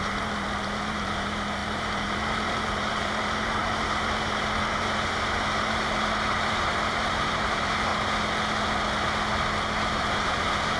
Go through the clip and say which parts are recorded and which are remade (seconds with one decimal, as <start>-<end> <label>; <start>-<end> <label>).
0.0-7.9 remade; 7.9-9.9 recorded; 9.9-10.8 remade